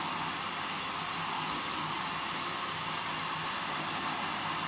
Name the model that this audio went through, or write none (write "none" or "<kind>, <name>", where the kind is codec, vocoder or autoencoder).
none